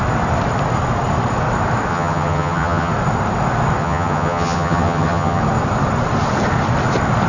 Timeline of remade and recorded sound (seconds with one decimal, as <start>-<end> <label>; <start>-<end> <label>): 0.0-1.9 recorded; 1.9-2.9 remade; 2.9-3.8 recorded; 3.8-5.4 remade; 5.4-7.3 recorded